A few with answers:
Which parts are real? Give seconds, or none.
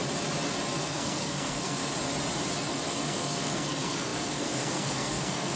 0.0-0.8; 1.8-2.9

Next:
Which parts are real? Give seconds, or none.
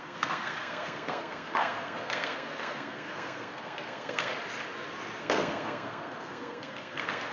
4.3-5.2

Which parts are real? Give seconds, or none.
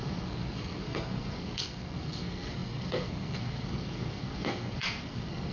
none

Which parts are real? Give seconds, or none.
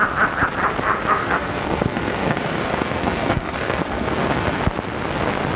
0.0-1.2; 4.6-5.6